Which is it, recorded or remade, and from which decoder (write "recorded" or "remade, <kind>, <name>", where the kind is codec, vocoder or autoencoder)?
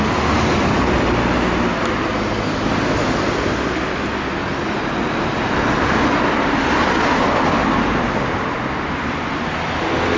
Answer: recorded